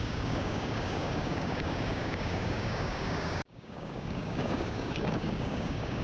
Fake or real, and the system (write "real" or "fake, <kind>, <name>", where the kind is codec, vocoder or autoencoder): fake, codec, DAC